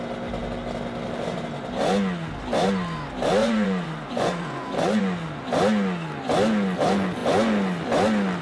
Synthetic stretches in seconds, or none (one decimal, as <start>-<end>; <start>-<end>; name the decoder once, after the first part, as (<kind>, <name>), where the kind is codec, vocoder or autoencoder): 3.4-5.0 (vocoder, Vocos)